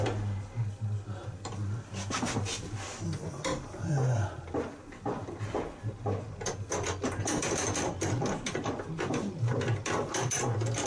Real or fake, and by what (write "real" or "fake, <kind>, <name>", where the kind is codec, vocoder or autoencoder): real